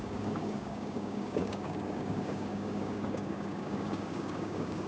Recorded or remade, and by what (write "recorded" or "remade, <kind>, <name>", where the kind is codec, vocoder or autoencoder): remade, codec, DAC